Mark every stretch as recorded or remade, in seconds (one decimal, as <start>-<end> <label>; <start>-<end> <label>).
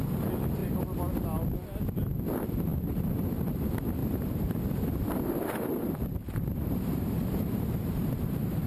0.0-2.7 recorded; 2.7-3.3 remade; 3.3-4.0 recorded; 4.0-8.7 remade